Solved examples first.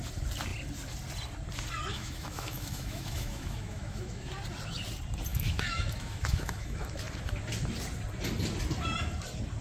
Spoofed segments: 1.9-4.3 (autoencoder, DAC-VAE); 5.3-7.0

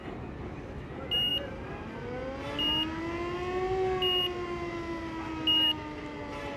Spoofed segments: none

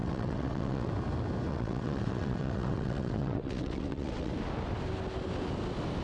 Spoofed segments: 0.0-0.9 (vocoder, WaveNeXt); 1.5-4.3

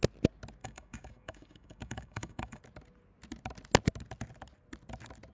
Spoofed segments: 0.6-2.6 (codec, DAC)

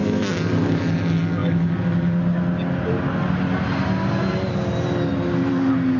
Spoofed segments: 0.0-0.8 (codec, DAC)

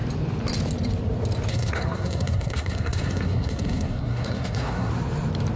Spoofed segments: 1.5-4.9 (codec, SNAC)

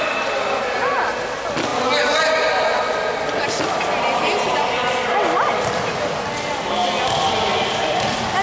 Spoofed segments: none

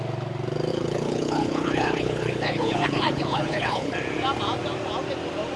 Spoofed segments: 0.7-3.9 (codec, HILCodec)